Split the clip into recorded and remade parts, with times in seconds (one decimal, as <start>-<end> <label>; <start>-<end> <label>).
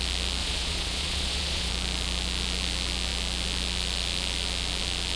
0.0-0.4 recorded; 0.4-1.7 remade; 1.7-5.2 recorded